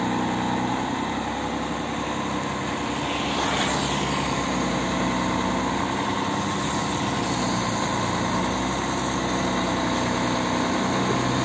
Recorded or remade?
recorded